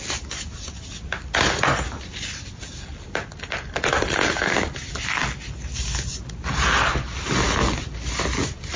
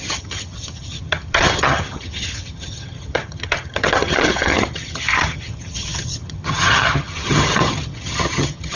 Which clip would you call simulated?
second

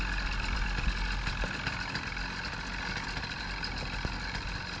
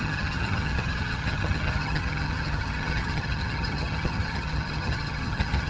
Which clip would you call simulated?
second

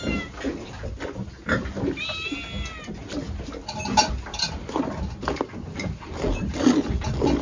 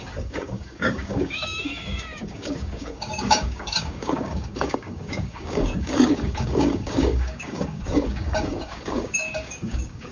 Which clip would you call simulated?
second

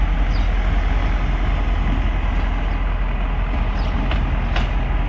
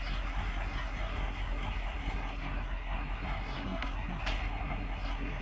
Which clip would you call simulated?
second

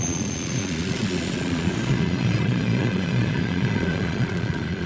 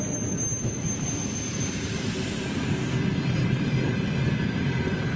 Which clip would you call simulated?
first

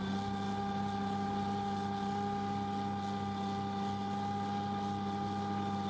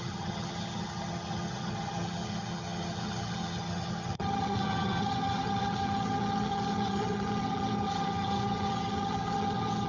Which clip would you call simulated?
second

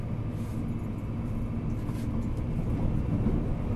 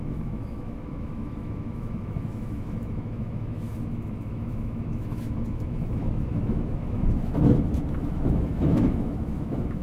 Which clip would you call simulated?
second